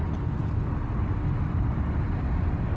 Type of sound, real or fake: real